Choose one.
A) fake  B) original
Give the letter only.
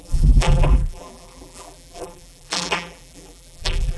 A